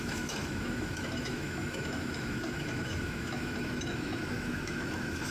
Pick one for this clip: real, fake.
fake